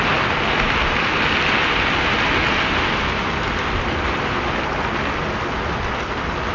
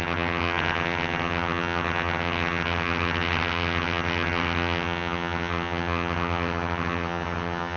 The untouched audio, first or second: first